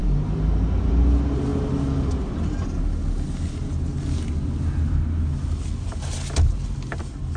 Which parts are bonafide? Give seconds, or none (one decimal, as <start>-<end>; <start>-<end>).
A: 0.0-7.4